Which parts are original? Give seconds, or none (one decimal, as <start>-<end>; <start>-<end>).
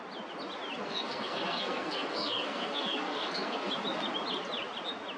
0.0-0.8; 3.7-5.2